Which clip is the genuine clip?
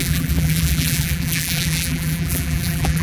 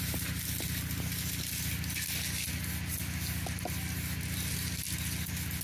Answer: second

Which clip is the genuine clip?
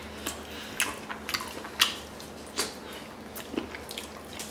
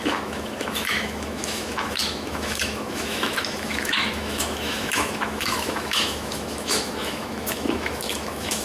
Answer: first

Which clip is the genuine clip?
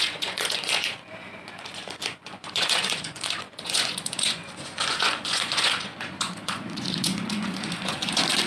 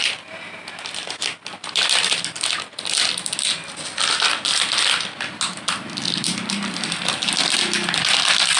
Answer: second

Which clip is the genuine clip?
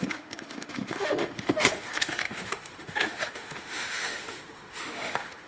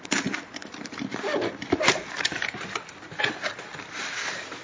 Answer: second